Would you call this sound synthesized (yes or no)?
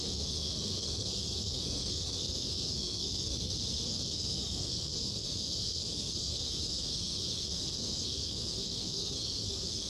yes